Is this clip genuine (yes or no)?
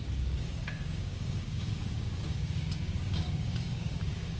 no